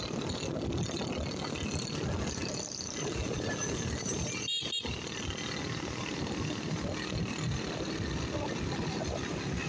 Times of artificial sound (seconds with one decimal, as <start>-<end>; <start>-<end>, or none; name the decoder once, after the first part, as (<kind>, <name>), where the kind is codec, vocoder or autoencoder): 2.4-3.5 (vocoder, BigVGAN v2)